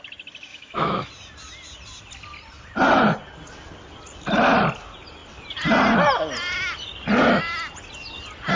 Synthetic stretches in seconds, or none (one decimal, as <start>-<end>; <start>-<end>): 0.5-1.1